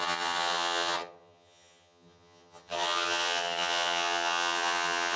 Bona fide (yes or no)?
no